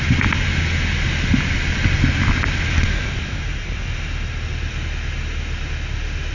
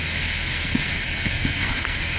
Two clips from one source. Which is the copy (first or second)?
second